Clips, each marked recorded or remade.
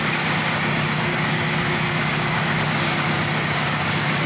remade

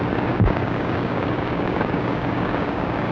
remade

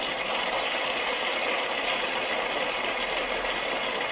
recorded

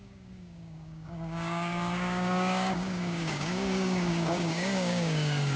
remade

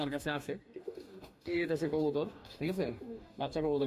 remade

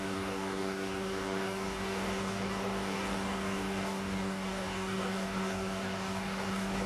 remade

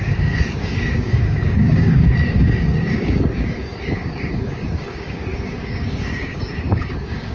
remade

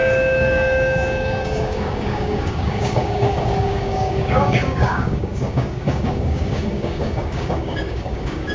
remade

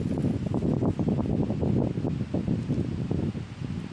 recorded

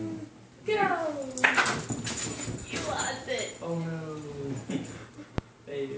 recorded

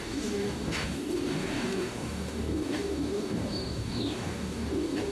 remade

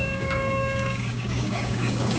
remade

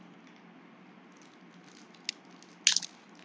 recorded